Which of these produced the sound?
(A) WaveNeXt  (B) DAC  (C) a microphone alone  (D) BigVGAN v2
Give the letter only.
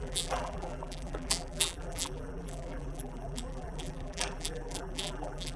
D